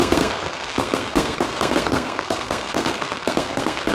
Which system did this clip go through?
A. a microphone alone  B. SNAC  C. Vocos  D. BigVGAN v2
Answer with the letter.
B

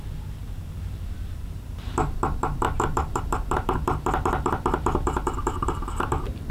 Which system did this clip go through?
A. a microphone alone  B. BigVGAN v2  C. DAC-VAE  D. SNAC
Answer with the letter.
B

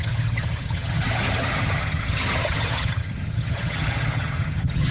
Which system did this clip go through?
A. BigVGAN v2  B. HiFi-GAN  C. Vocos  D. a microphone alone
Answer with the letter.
B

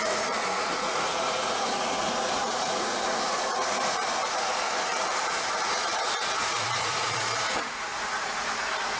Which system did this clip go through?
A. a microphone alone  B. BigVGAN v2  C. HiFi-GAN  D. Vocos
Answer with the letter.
D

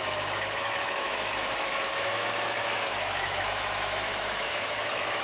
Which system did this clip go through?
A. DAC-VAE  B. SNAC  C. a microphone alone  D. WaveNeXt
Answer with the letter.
A